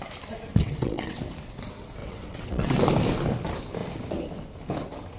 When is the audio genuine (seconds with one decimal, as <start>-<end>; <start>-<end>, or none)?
0.0-0.5; 1.2-2.0; 2.8-5.2

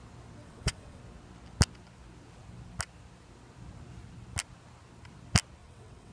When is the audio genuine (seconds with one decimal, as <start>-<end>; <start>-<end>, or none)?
0.0-0.4; 1.0-5.6

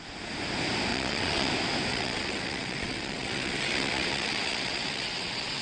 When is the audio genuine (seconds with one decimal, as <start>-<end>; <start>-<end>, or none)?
0.0-0.9; 1.5-1.9

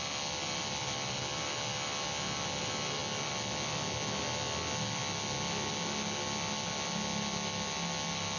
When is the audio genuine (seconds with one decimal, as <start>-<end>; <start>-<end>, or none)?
0.0-8.4

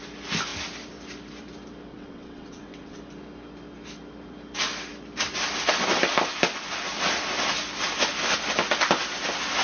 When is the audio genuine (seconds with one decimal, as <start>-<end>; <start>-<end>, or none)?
0.0-1.9; 3.0-9.6

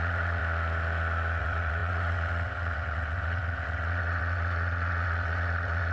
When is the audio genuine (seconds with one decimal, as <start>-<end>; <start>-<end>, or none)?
0.4-1.4

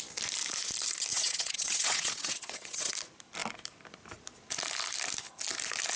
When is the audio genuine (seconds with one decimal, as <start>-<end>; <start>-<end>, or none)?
0.0-1.1; 2.9-6.0

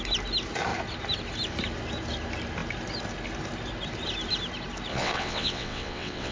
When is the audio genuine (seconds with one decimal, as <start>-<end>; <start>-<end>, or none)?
0.0-4.9